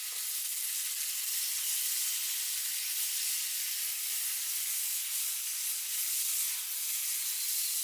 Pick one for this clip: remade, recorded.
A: recorded